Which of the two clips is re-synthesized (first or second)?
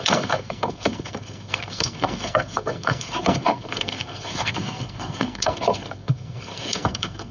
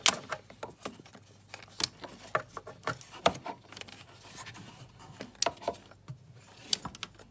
first